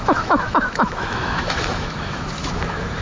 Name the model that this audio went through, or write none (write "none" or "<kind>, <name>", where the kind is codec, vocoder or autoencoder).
autoencoder, DAC-VAE